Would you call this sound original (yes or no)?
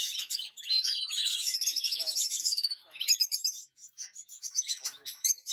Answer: no